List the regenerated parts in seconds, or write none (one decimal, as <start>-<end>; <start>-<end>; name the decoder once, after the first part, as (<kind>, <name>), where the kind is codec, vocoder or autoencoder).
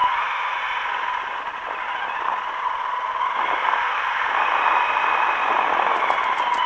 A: 0.0-0.6 (vocoder, BigVGAN v2)